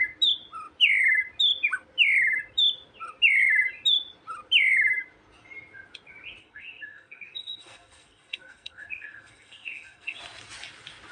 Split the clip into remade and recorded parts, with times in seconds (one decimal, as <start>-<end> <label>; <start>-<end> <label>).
0.0-6.4 recorded; 6.4-10.2 remade; 10.2-11.1 recorded